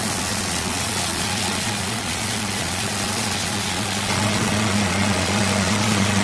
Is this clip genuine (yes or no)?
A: no